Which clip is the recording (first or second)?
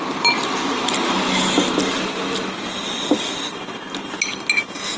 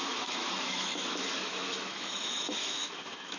first